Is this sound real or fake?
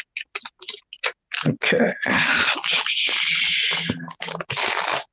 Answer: real